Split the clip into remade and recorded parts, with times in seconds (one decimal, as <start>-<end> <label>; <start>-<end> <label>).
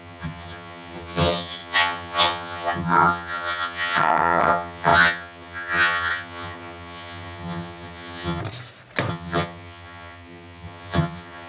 0.0-8.4 remade; 8.4-9.1 recorded; 9.1-11.5 remade